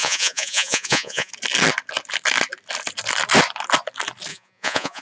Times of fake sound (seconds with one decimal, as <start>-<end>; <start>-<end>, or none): 0.0-1.3; 4.3-5.0